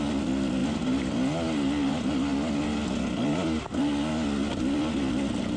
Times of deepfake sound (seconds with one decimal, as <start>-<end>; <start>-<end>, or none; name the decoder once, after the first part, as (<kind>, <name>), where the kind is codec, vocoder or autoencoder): none